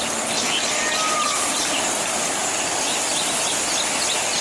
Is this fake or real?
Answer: real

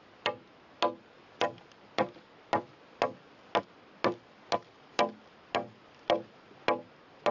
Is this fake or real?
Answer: real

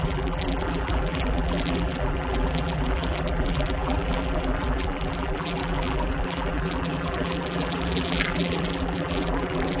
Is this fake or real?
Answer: fake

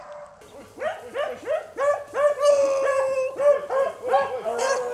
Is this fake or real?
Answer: real